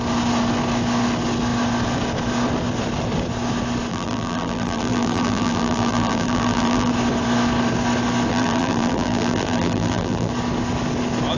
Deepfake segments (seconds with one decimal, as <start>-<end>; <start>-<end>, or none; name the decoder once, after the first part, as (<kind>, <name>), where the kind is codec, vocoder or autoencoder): 3.9-6.9 (vocoder, BigVGAN v2); 8.3-10.3